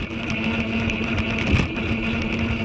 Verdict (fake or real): real